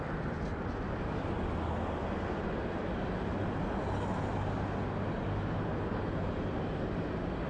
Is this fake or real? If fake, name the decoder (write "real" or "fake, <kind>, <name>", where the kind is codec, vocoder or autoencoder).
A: real